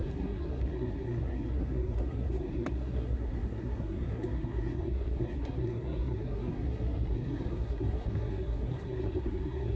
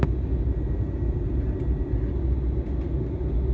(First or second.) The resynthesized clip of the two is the first